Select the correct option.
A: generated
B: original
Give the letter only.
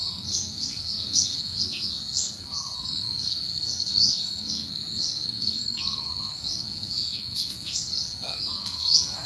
A